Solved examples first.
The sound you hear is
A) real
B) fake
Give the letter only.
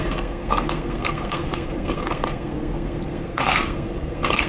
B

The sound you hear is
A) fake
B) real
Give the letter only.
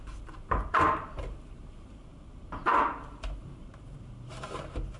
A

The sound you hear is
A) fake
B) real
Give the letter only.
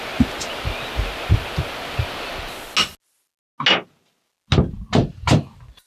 B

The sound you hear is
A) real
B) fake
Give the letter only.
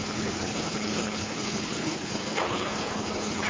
B